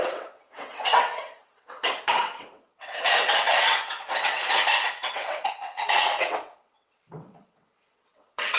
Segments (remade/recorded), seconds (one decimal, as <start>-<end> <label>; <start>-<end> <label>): 0.0-4.4 remade; 4.4-4.9 recorded; 4.9-8.6 remade